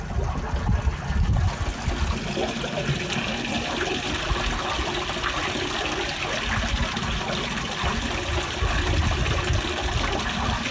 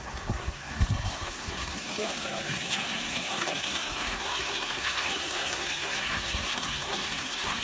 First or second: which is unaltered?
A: first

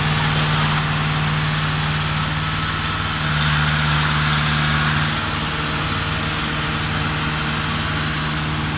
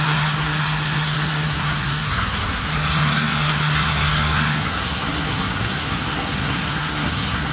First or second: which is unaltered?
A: first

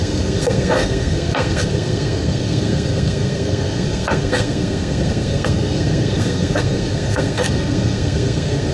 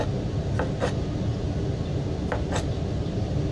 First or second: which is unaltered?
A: second